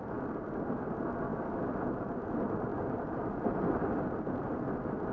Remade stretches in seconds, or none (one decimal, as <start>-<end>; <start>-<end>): 1.3-2.0; 2.7-3.7